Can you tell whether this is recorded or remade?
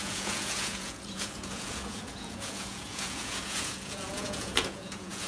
remade